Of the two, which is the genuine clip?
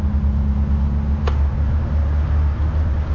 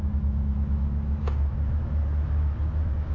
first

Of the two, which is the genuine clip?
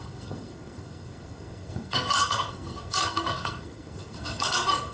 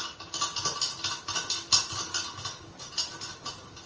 second